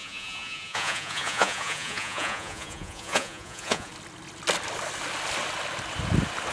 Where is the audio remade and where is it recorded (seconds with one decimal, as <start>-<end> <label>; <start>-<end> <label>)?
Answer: 0.0-3.9 remade; 3.9-6.5 recorded